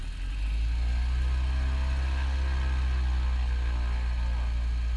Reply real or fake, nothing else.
real